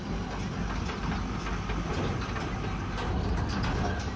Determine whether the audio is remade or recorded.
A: recorded